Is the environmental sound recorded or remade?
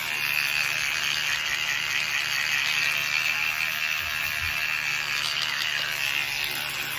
recorded